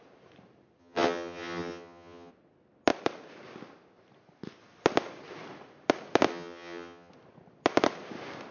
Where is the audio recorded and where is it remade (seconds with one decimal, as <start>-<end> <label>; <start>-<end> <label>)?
0.0-0.8 recorded; 0.8-2.3 remade; 2.3-6.3 recorded; 6.3-7.1 remade; 7.1-8.5 recorded